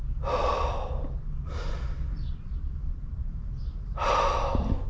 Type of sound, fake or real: real